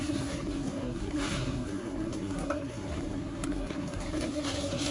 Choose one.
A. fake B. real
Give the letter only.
A